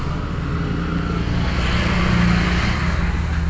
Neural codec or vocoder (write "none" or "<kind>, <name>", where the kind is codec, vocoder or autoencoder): none